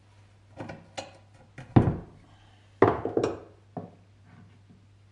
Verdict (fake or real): real